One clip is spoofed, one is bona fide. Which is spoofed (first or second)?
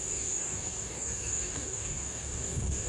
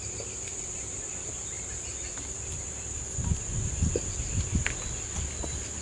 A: first